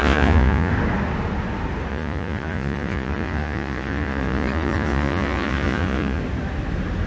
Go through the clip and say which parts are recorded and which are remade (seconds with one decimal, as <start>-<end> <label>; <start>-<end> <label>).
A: 0.0-0.7 remade; 0.7-1.9 recorded; 1.9-6.2 remade; 6.2-7.1 recorded